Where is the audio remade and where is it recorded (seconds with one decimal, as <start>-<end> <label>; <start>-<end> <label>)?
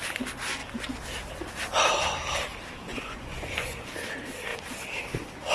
0.0-2.9 recorded; 2.9-3.9 remade; 3.9-5.5 recorded